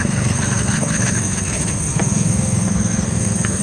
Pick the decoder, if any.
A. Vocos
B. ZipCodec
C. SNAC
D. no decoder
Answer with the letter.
C